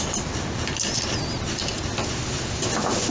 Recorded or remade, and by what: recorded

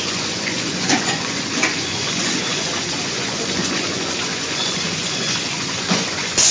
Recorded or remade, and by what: remade, vocoder, Vocos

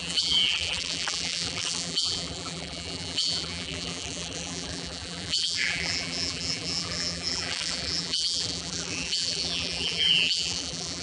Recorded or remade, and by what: remade, vocoder, BigVGAN v2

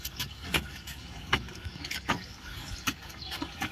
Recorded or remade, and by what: remade, codec, DAC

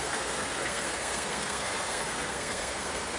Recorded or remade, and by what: remade, codec, SNAC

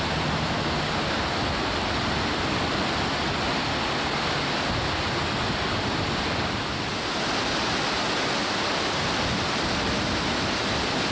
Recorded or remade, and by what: recorded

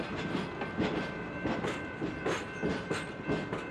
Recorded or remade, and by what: recorded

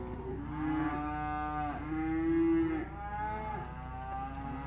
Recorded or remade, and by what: recorded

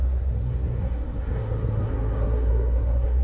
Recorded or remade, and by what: remade, codec, SNAC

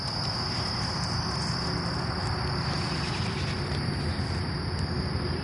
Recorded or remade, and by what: recorded